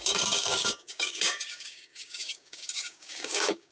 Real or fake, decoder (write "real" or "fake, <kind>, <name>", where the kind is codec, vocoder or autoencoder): fake, codec, DAC